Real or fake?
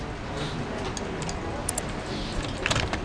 real